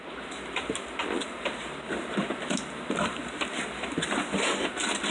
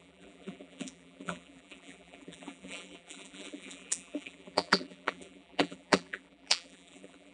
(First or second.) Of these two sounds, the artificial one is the second